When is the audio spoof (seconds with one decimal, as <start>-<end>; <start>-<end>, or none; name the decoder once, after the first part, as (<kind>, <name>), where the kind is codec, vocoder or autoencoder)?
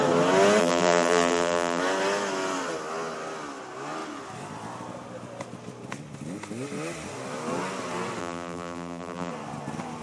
0.6-1.8 (vocoder, BigVGAN v2); 8.2-9.3